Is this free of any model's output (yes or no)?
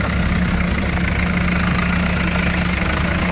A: yes